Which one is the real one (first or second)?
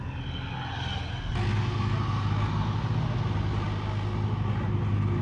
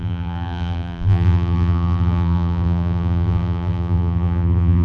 first